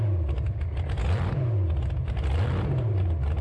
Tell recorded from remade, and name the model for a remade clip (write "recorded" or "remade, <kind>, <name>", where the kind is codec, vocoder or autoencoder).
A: recorded